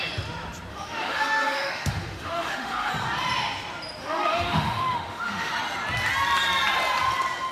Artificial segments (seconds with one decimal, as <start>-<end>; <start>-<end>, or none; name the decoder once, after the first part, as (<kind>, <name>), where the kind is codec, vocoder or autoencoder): 0.7-2.9 (autoencoder, DAC-VAE); 4.0-5.5